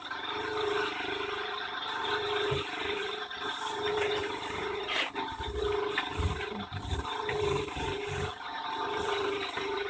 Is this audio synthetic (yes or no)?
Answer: yes